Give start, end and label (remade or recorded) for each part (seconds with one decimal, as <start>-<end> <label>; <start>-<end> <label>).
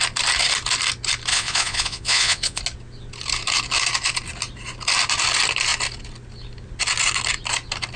0.0-1.3 recorded; 1.3-2.6 remade; 2.6-8.0 recorded